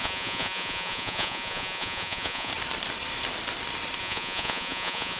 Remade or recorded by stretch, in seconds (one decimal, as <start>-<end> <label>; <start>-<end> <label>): 0.0-2.5 remade; 2.5-4.0 recorded; 4.0-5.2 remade

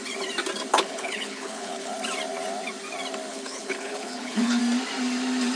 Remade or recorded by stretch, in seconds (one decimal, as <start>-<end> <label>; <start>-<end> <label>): 0.0-0.7 recorded; 0.7-1.9 remade; 1.9-3.3 recorded; 3.3-4.6 remade; 4.6-5.6 recorded

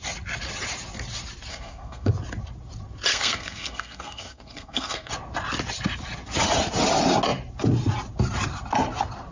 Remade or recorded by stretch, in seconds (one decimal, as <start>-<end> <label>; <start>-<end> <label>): 0.0-1.5 recorded; 1.5-2.1 remade; 2.1-3.1 recorded; 3.1-5.1 remade; 5.1-9.3 recorded

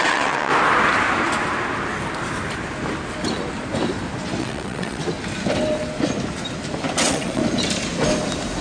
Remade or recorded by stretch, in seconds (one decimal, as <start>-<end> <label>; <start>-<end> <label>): 0.0-0.5 remade; 0.5-4.4 recorded; 4.4-5.0 remade; 5.0-7.0 recorded; 7.0-7.4 remade; 7.4-8.6 recorded

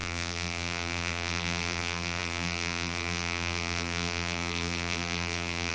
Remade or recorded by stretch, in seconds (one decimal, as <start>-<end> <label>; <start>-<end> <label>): 0.0-5.7 remade

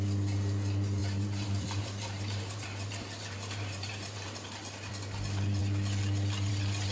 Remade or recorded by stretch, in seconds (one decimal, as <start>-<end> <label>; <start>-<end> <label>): 0.0-1.0 recorded; 1.0-4.9 remade; 4.9-6.9 recorded